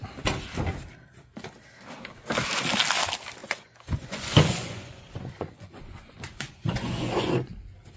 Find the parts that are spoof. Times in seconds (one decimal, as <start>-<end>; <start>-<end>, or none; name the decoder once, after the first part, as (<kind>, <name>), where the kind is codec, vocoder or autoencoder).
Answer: 3.4-7.3 (vocoder, Vocos)